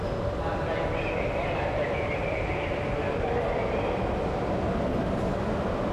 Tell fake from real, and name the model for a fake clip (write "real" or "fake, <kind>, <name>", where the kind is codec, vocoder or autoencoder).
real